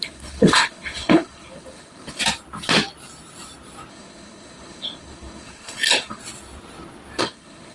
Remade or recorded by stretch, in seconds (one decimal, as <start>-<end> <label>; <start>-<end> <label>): 0.0-2.2 remade; 2.2-3.9 recorded; 3.9-6.2 remade; 6.2-7.2 recorded; 7.2-7.7 remade